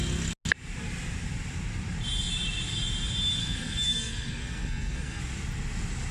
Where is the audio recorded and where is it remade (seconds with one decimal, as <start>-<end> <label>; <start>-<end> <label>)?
0.0-3.4 recorded; 3.4-5.2 remade; 5.2-6.1 recorded